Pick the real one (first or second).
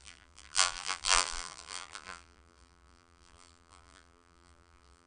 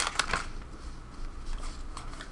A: second